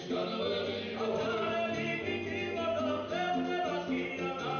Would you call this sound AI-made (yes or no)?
no